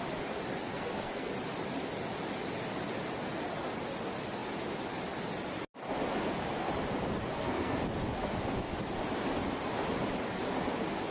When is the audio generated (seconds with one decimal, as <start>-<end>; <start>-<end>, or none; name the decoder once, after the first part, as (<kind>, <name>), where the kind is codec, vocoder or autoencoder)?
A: 0.7-1.3 (codec, SNAC); 7.3-7.8